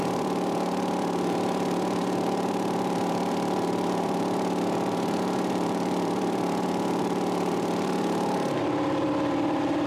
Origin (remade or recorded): remade